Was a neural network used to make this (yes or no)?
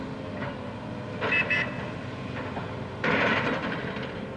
no